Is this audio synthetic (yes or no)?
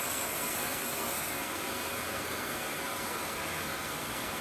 yes